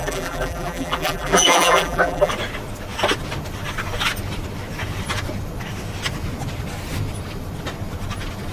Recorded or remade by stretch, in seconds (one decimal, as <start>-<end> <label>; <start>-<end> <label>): 0.0-2.3 remade; 2.3-8.5 recorded